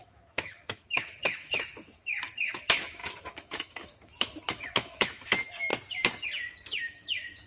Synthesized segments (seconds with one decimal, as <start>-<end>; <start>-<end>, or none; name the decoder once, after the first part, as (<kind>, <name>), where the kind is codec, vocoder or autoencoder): 0.0-5.7 (autoencoder, DAC-VAE); 6.5-7.5